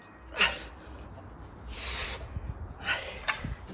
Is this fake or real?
real